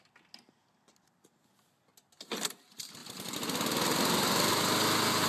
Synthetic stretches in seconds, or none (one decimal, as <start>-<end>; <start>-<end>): 3.0-4.5